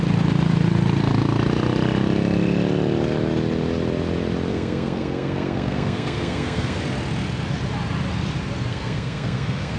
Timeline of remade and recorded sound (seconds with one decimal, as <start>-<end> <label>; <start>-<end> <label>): 0.0-4.5 recorded; 4.5-6.8 remade; 6.8-8.7 recorded; 8.7-9.8 remade